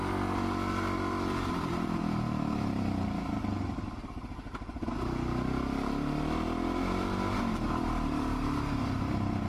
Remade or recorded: recorded